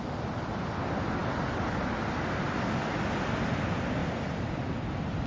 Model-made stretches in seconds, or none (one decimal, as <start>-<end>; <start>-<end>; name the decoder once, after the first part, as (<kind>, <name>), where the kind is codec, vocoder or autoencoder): none

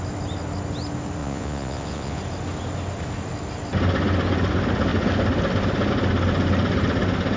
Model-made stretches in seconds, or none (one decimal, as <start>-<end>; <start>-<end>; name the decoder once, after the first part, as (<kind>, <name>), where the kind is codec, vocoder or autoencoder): 1.2-2.2 (vocoder, Vocos)

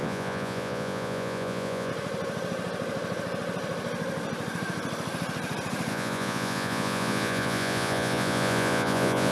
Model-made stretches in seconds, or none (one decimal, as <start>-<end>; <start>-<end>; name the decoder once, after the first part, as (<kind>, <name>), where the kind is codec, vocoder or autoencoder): 0.0-1.9 (vocoder, Vocos); 5.9-9.3

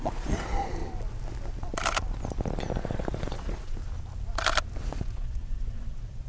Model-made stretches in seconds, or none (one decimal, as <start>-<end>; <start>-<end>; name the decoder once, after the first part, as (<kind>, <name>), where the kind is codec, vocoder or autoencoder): 0.0-0.8 (vocoder, Vocos); 2.8-3.8; 4.8-6.3

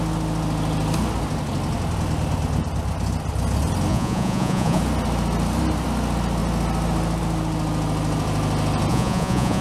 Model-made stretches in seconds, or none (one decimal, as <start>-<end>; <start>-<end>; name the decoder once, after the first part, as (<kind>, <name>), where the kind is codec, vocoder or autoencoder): 3.9-4.8 (vocoder, Vocos); 8.9-9.6

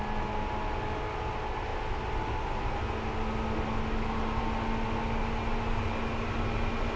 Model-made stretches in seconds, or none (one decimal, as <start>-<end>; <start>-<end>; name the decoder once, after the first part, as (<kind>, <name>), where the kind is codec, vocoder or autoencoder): none

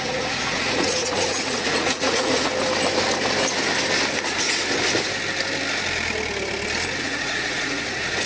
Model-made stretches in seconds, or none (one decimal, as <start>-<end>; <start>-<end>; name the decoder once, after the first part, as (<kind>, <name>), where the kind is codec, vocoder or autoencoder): 0.0-2.5 (vocoder, Vocos); 7.0-8.3

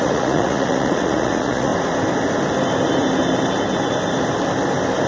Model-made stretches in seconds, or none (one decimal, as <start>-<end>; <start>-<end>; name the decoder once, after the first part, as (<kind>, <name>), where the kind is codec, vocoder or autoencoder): 0.0-1.7 (vocoder, Vocos)